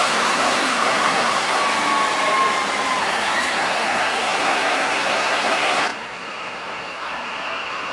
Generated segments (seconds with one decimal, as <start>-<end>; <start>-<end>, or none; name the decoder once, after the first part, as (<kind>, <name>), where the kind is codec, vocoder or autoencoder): 0.0-1.6 (codec, SNAC); 3.0-7.9